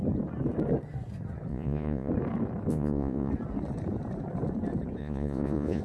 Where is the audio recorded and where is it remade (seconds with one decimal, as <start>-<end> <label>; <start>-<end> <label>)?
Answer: 0.0-1.5 recorded; 1.5-2.1 remade; 2.1-2.7 recorded; 2.7-3.3 remade; 3.3-5.0 recorded; 5.0-5.8 remade